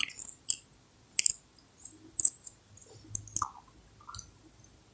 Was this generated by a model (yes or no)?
no